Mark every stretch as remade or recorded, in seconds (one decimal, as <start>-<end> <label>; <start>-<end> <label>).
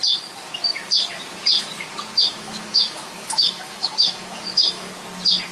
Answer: 0.0-2.3 recorded; 2.3-4.9 remade; 4.9-5.5 recorded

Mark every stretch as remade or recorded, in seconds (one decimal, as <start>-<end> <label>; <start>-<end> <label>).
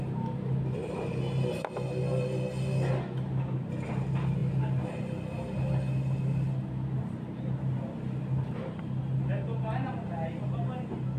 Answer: 0.0-11.2 recorded